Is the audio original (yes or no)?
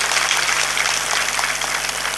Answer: yes